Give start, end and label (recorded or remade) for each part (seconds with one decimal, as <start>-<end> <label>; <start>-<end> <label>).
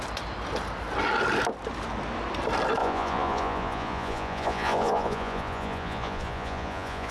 0.0-2.8 recorded; 2.8-7.1 remade